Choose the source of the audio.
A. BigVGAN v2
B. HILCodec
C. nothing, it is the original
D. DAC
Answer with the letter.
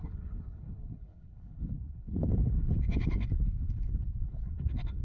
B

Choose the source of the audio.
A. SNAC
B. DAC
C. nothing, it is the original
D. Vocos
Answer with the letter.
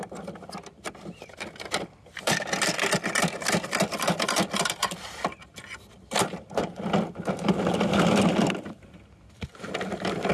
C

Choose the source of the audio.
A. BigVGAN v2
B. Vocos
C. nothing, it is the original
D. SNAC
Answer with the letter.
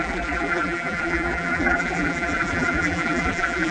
A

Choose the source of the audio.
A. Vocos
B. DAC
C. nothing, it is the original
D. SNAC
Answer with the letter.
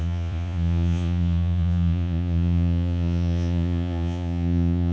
A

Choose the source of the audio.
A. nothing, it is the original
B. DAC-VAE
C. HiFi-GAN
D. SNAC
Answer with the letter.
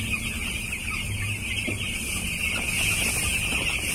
A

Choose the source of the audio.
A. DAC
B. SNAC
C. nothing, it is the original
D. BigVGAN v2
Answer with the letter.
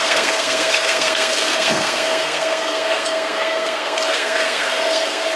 B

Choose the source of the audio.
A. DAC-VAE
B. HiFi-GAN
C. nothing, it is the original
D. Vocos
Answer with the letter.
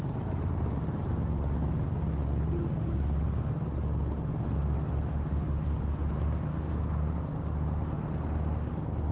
C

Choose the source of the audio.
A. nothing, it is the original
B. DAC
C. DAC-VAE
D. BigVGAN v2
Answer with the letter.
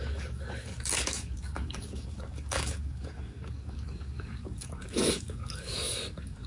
B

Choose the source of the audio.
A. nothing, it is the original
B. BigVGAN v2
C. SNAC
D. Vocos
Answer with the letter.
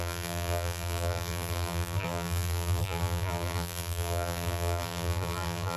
B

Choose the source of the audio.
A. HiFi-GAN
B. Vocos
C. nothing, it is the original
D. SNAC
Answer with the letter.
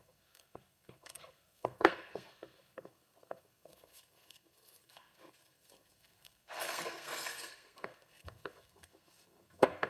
D